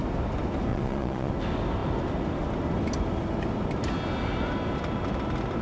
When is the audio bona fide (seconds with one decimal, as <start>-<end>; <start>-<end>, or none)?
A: 0.0-0.7; 1.3-5.6